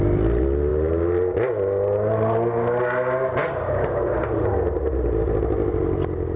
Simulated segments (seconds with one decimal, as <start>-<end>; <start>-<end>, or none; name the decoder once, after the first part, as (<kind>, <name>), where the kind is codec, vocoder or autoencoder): none